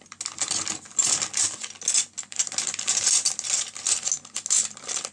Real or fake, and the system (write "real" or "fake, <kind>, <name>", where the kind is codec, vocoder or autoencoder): real